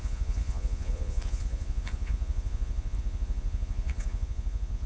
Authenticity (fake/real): fake